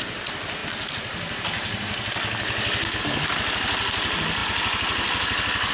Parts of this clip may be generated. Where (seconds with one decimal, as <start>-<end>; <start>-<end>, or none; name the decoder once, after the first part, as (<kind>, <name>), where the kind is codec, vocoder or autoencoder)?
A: none